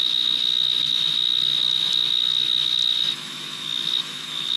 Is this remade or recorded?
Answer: remade